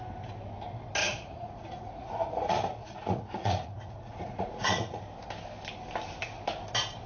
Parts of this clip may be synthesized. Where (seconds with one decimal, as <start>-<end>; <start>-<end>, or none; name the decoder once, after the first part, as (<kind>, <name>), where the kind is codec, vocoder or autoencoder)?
1.0-5.0 (vocoder, Vocos)